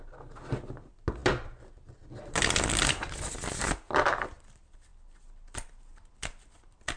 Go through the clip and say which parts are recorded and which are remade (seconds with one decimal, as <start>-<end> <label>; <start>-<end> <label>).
0.0-7.0 recorded